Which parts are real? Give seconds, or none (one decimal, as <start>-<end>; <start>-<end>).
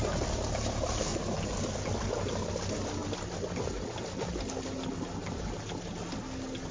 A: 0.0-6.7